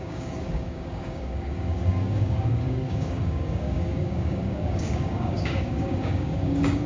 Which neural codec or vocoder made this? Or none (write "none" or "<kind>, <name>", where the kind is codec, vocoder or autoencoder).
codec, DAC